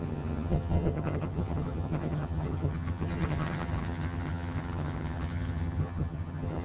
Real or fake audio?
fake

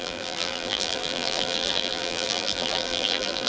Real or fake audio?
fake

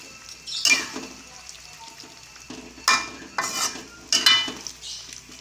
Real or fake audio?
real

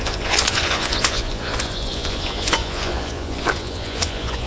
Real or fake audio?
fake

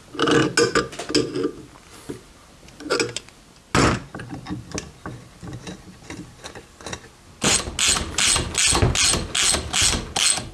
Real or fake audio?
real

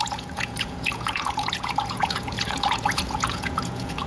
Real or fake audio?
fake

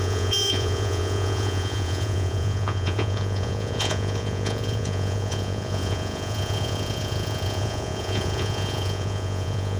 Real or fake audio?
fake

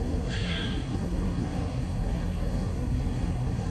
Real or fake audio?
fake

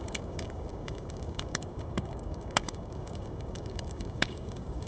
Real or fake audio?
fake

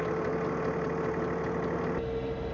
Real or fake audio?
real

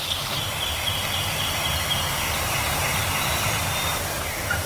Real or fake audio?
real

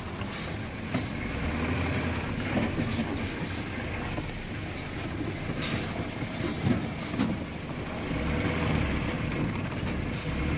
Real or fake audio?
real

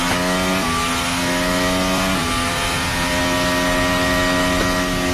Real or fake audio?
real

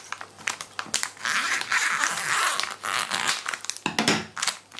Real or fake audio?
real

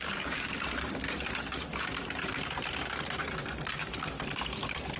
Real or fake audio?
fake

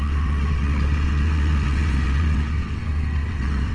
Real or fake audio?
fake